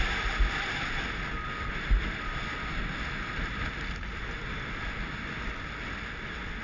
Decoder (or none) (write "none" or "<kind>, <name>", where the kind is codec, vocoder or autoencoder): none